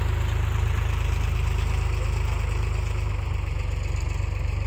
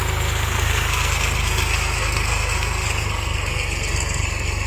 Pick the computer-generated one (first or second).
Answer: second